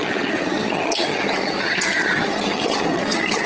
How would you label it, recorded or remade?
remade